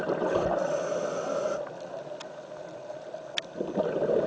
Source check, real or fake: real